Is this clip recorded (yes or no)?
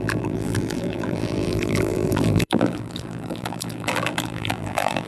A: no